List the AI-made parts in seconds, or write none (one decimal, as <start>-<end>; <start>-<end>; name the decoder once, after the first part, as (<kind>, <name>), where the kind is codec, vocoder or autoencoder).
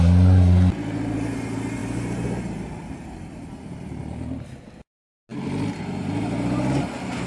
none